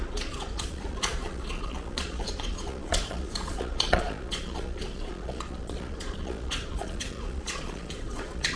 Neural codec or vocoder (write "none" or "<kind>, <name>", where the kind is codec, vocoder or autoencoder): vocoder, Vocos